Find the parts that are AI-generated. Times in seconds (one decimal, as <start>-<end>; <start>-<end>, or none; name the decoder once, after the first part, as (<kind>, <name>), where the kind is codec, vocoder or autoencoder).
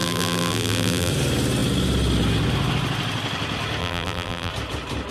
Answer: 0.0-1.1 (vocoder, BigVGAN v2); 3.8-4.5